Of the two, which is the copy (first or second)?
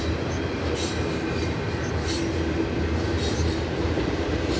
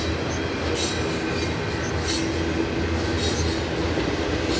first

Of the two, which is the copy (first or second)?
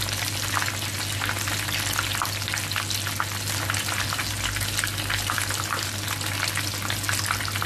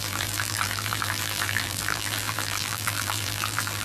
second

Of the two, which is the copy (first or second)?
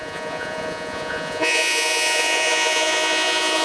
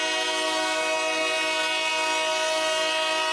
first